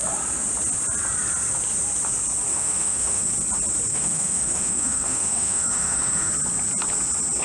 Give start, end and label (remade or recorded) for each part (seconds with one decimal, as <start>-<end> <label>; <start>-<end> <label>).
0.0-2.5 recorded; 2.5-3.3 remade; 3.3-3.9 recorded; 3.9-6.3 remade; 6.3-7.4 recorded